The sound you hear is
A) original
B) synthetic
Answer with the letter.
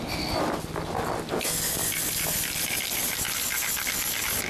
A